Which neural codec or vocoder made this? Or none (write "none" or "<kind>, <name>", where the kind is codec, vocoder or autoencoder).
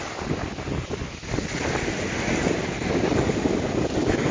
none